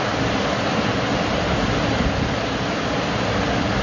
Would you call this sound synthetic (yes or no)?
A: no